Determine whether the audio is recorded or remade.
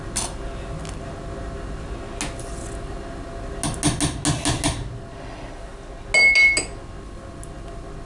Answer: recorded